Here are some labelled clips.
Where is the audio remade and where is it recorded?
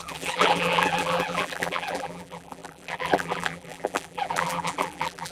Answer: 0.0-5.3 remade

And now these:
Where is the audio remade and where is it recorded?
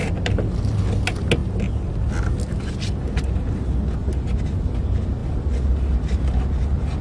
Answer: 0.0-0.8 remade; 0.8-7.0 recorded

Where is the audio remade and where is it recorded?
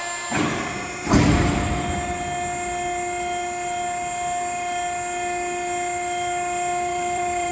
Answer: 0.0-6.9 recorded; 6.9-7.5 remade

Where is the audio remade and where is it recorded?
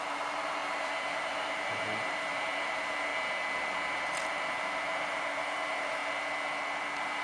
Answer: 0.0-3.1 remade; 3.1-3.7 recorded; 3.7-6.0 remade; 6.0-6.8 recorded; 6.8-7.2 remade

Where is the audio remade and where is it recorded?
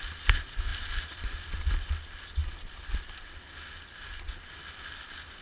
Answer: 0.0-0.7 recorded; 0.7-1.9 remade; 1.9-5.4 recorded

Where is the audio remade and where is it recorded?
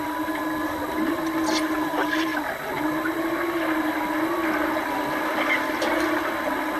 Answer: 0.0-6.8 recorded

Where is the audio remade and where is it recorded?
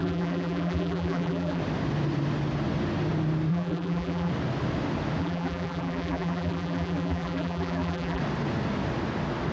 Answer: 0.0-1.6 remade; 1.6-3.5 recorded; 3.5-4.3 remade; 4.3-5.2 recorded; 5.2-8.2 remade; 8.2-9.5 recorded